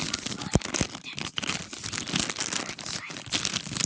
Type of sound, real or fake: real